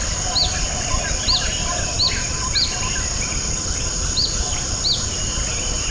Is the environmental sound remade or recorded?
recorded